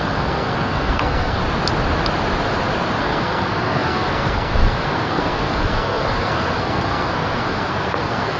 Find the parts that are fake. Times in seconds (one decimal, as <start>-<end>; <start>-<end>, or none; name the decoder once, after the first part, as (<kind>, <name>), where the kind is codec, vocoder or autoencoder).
0.0-1.4 (codec, SNAC); 3.0-8.4